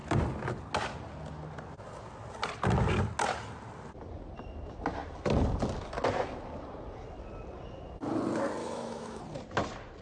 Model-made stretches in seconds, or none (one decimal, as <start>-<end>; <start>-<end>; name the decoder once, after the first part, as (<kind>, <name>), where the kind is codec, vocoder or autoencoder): 8.6-9.2 (autoencoder, DAC-VAE)